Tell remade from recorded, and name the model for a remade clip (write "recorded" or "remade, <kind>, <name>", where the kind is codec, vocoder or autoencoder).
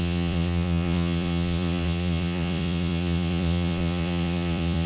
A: remade, vocoder, Vocos